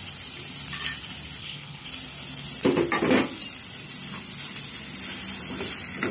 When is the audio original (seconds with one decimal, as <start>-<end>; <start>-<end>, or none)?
0.0-1.4; 1.9-6.1